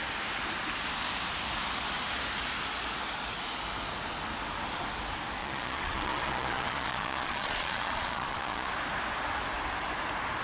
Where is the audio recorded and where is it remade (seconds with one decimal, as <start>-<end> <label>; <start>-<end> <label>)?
0.0-5.4 recorded; 5.4-8.7 remade; 8.7-10.4 recorded